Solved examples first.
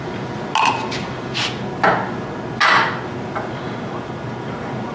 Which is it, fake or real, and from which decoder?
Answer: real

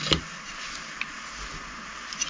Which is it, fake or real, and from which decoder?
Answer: real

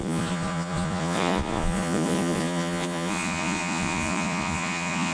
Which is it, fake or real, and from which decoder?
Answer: fake, vocoder, Vocos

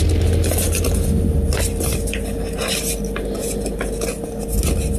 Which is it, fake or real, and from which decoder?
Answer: real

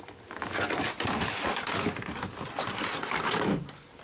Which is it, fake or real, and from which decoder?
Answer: real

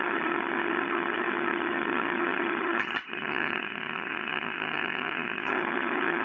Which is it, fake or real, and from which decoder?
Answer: fake, vocoder, HiFi-GAN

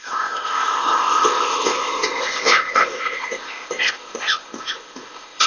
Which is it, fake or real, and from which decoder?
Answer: fake, codec, ZipCodec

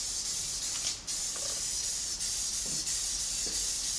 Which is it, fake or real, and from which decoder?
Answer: real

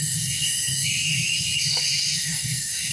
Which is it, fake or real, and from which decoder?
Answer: fake, codec, SNAC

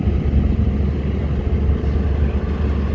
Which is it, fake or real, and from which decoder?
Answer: real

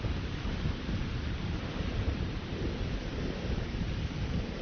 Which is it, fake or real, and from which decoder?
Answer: fake, vocoder, BigVGAN v2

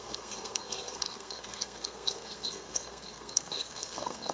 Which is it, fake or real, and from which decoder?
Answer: fake, codec, SNAC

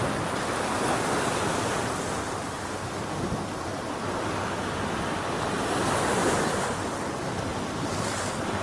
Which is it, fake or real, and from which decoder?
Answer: real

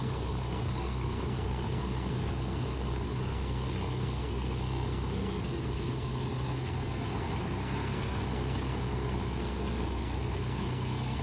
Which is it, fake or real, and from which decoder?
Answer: fake, codec, SNAC